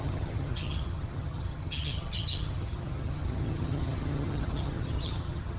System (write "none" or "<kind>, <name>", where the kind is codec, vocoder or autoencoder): vocoder, HiFi-GAN